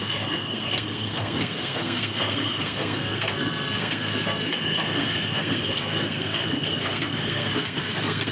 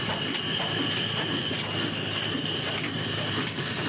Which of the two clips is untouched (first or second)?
second